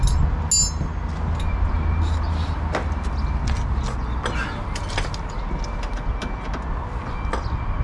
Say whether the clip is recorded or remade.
recorded